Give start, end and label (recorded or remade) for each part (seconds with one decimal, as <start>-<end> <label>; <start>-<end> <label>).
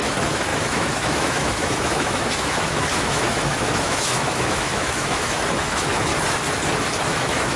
0.0-6.1 remade; 6.1-7.1 recorded; 7.1-7.6 remade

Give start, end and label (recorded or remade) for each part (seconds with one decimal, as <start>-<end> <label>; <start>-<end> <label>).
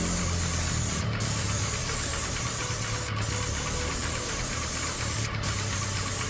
0.0-6.3 recorded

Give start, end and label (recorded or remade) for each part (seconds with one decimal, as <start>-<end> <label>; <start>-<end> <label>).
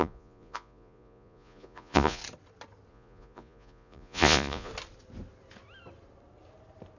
0.0-2.2 remade; 2.2-2.9 recorded; 2.9-4.7 remade; 4.7-7.0 recorded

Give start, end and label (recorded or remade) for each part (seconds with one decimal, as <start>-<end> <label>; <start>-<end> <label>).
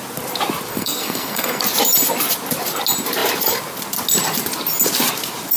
0.0-0.7 recorded; 0.7-1.6 remade; 1.6-5.6 recorded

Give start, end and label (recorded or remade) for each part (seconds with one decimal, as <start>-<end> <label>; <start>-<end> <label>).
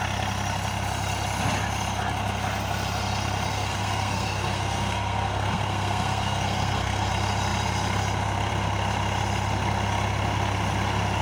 0.0-3.5 recorded; 3.5-7.1 remade; 7.1-11.2 recorded